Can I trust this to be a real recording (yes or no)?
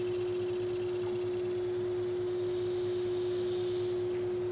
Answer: yes